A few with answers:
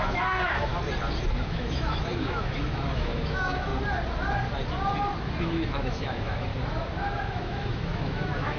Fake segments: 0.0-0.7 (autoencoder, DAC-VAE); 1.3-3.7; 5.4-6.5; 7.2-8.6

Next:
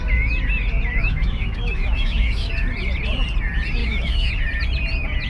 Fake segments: 1.0-2.5 (autoencoder, DAC-VAE); 3.8-4.3

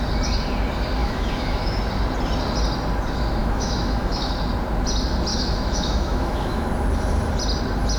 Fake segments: 1.0-1.8 (autoencoder, DAC-VAE); 3.4-4.3; 5.3-6.7

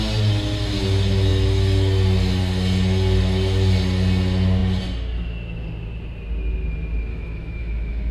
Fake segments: 7.1-8.1 (autoencoder, DAC-VAE)